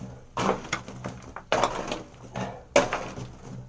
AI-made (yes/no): no